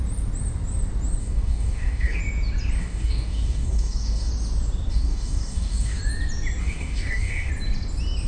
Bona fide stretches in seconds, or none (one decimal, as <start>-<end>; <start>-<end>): 0.0-1.2; 2.2-2.8; 4.3-4.9; 6.0-6.6; 7.5-8.3